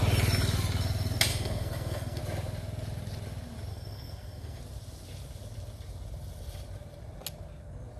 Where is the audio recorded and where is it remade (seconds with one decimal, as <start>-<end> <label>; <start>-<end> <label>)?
0.0-1.3 recorded; 1.3-2.2 remade; 2.2-3.7 recorded; 3.7-4.6 remade; 4.6-8.0 recorded